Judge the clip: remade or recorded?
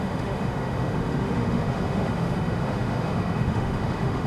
remade